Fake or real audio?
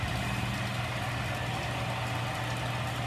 real